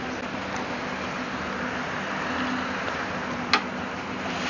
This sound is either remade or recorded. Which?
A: recorded